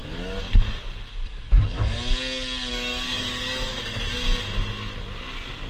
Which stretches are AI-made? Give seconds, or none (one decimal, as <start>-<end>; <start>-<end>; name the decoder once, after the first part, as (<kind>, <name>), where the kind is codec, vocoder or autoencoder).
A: 0.0-0.5 (codec, DAC); 2.7-4.1